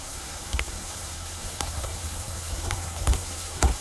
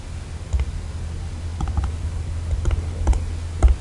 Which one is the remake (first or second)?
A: first